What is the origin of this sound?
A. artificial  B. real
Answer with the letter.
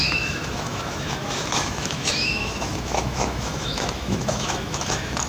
A